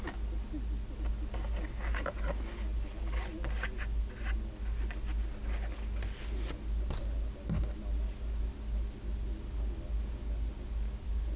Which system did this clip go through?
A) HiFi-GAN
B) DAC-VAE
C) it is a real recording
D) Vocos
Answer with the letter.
C